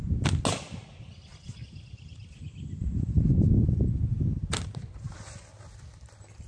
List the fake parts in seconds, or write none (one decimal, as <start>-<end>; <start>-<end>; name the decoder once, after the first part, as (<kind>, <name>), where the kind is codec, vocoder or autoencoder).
none